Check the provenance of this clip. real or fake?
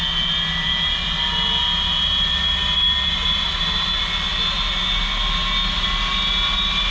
real